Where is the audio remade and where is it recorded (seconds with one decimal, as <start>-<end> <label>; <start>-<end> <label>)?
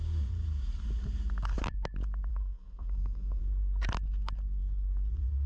0.0-2.3 recorded; 2.3-3.4 remade; 3.4-5.5 recorded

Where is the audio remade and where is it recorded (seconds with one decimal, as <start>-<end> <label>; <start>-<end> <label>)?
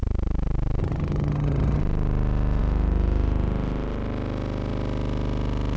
0.0-0.8 recorded; 0.8-1.8 remade; 1.8-5.8 recorded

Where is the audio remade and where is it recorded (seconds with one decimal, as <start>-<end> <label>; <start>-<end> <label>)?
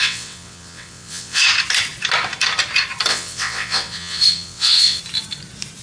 0.0-1.4 remade; 1.4-3.1 recorded; 3.1-5.0 remade; 5.0-5.8 recorded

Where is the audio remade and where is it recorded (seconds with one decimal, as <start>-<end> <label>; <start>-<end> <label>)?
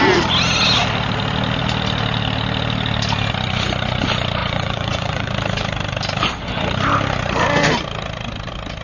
0.0-4.4 recorded; 4.4-5.3 remade; 5.3-8.8 recorded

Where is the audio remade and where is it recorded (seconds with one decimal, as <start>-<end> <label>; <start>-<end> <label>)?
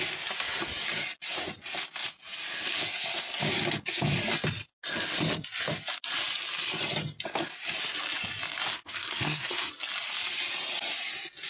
0.0-8.7 recorded; 8.7-9.7 remade; 9.7-11.5 recorded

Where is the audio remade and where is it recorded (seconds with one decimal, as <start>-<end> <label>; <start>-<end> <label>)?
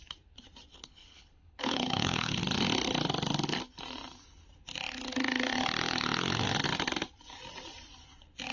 0.0-0.7 recorded; 0.7-2.4 remade; 2.4-8.5 recorded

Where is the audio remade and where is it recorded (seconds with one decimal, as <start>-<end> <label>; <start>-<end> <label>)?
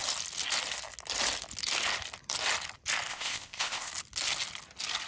0.0-3.1 recorded; 3.1-3.9 remade; 3.9-5.1 recorded